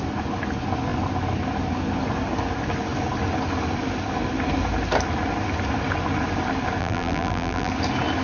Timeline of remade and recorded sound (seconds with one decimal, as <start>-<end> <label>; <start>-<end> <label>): 0.0-6.8 recorded; 6.8-7.7 remade; 7.7-8.2 recorded